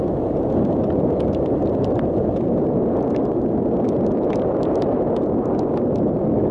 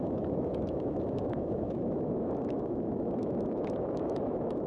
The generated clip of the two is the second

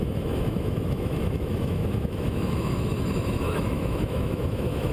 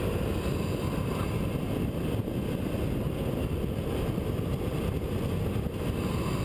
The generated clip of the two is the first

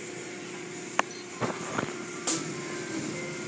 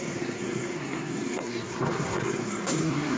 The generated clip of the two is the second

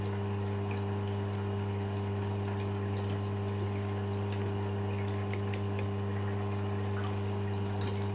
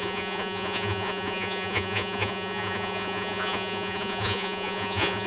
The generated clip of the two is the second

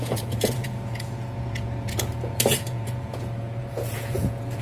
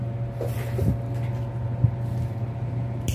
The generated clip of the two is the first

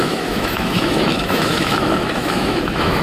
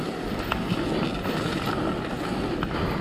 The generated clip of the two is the first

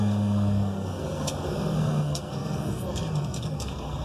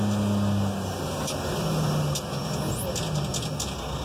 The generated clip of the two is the first